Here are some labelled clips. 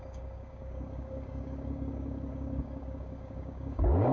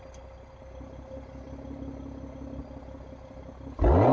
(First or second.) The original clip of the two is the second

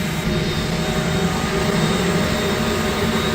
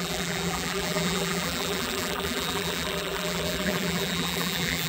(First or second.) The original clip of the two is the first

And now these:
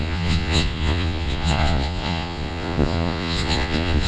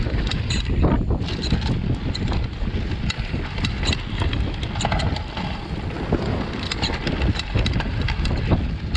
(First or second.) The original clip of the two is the second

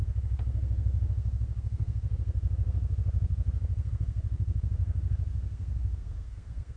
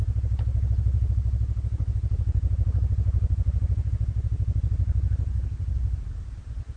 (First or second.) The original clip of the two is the second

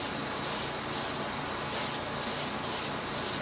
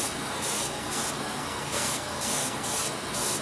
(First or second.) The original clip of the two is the first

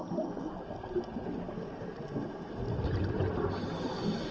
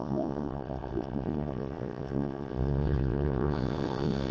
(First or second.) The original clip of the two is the first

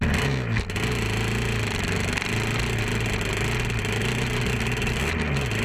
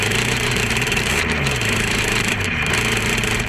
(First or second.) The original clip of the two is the first